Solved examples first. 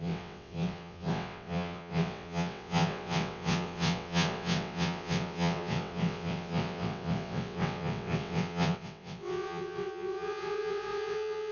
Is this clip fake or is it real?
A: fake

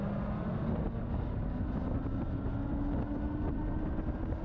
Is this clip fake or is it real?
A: real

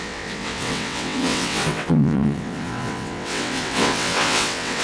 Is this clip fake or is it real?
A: fake